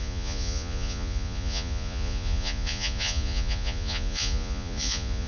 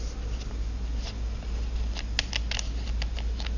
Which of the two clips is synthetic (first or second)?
first